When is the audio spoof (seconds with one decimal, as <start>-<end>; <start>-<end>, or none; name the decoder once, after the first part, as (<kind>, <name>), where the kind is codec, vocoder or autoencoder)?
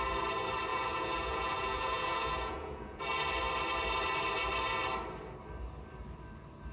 0.7-3.0 (vocoder, Vocos)